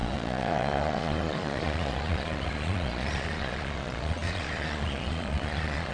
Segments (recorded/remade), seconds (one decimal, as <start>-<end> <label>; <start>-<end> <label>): 0.0-5.9 remade

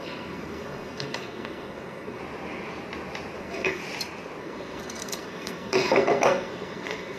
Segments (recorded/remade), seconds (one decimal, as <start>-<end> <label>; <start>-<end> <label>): 0.0-2.2 remade; 2.2-3.4 recorded; 3.4-3.8 remade; 3.8-4.4 recorded; 4.4-7.2 remade

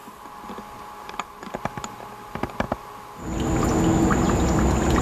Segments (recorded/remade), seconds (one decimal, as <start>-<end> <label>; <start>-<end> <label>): 0.0-5.0 recorded

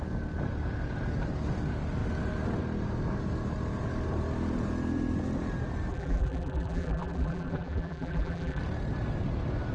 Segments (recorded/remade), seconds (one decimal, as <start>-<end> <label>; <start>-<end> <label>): 0.0-5.9 recorded; 5.9-8.6 remade; 8.6-9.7 recorded

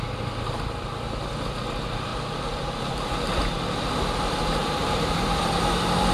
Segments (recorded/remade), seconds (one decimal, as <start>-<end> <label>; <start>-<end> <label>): 0.0-2.1 recorded; 2.1-2.9 remade; 2.9-4.6 recorded; 4.6-5.4 remade; 5.4-6.1 recorded

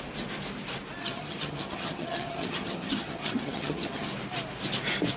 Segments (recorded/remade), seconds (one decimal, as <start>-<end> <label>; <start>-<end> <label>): 0.0-1.0 recorded; 1.0-4.1 remade; 4.1-5.2 recorded

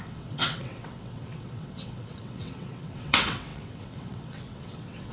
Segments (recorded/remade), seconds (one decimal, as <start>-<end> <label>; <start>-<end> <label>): 0.0-5.1 remade